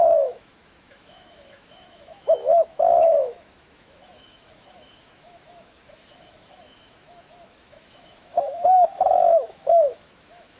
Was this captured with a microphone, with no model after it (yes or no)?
no